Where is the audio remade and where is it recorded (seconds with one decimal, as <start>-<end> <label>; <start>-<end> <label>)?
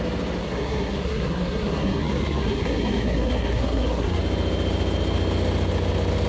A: 0.0-0.4 recorded; 0.4-4.2 remade; 4.2-6.3 recorded